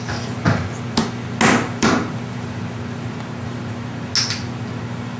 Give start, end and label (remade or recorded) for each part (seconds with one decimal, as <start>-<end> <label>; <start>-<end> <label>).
0.0-5.2 recorded